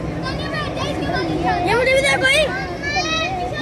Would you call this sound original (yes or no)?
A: yes